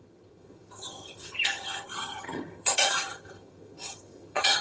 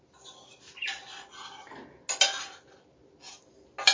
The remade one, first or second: first